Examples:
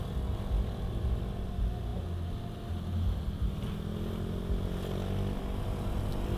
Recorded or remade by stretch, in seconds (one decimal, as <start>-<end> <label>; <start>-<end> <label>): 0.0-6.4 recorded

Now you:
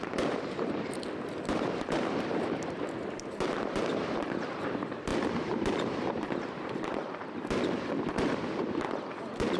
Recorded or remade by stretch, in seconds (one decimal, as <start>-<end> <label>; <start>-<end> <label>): 0.0-9.6 remade

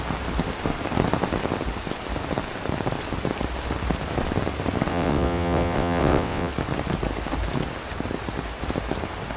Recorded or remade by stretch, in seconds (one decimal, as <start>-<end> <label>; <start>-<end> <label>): 0.0-4.9 recorded; 4.9-6.5 remade; 6.5-9.4 recorded

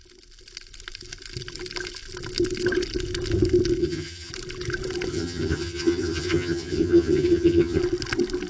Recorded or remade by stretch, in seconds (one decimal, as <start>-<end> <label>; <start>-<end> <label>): 0.0-3.8 recorded; 3.8-4.3 remade; 4.3-5.1 recorded; 5.1-7.8 remade; 7.8-8.5 recorded

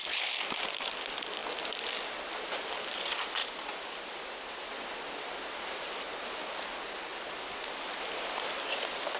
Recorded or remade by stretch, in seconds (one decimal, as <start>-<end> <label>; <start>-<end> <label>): 0.0-3.4 recorded; 3.4-4.7 remade; 4.7-9.2 recorded